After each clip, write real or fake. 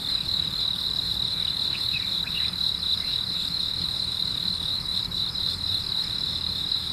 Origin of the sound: fake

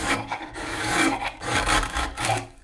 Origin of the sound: fake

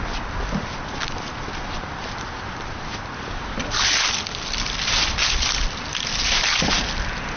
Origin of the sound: real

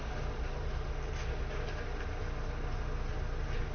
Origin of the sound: real